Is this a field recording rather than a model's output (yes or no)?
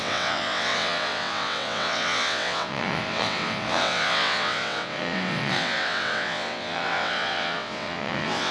no